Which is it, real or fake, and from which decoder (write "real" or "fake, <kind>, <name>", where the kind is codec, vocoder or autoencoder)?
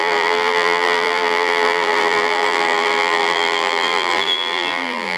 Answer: fake, vocoder, BigVGAN v2